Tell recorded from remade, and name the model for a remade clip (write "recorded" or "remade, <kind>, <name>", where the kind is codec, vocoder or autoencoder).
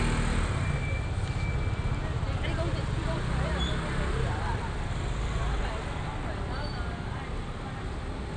recorded